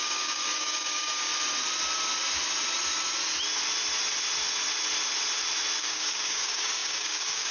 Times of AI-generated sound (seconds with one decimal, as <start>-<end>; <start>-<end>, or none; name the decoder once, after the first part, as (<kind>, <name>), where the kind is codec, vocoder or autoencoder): 0.0-1.3 (codec, DAC); 5.8-7.5